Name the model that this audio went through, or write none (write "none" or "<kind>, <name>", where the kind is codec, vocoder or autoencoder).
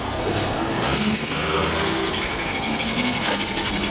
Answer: codec, SNAC